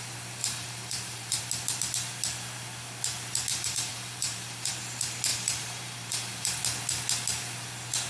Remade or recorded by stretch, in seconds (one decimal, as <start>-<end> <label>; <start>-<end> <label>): 0.0-0.4 recorded; 0.4-1.4 remade; 1.4-3.5 recorded; 3.5-4.7 remade; 4.7-5.3 recorded; 5.3-6.6 remade; 6.6-8.1 recorded